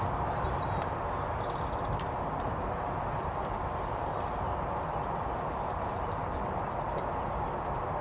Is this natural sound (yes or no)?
yes